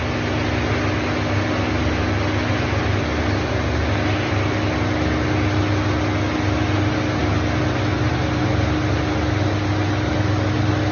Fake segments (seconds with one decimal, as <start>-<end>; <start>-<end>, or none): none